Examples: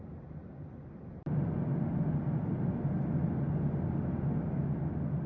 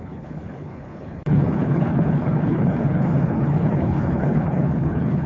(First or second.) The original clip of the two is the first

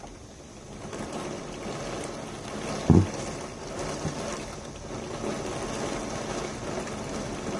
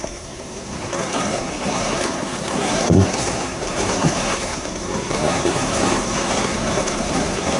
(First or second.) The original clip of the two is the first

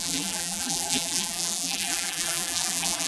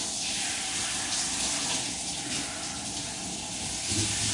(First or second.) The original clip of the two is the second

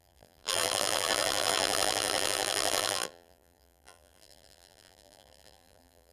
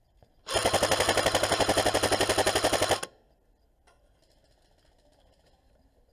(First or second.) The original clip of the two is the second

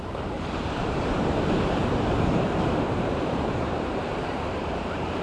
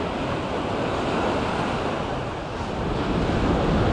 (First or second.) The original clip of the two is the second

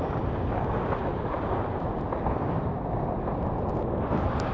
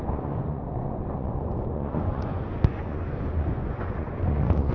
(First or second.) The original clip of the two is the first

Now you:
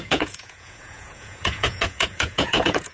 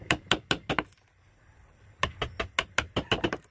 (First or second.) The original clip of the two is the second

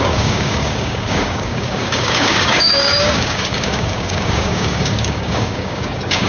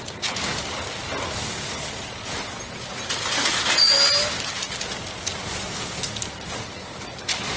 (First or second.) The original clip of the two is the second